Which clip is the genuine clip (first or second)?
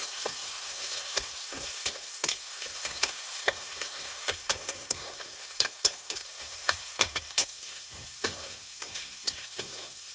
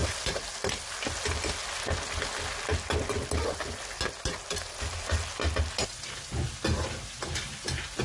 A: second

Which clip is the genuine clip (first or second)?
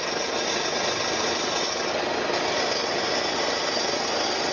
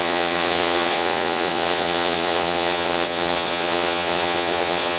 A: first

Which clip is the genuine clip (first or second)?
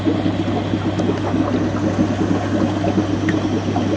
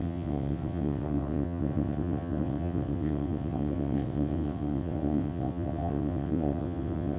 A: first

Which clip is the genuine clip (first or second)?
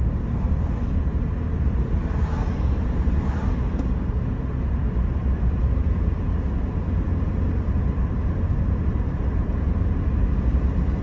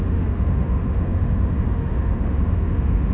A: first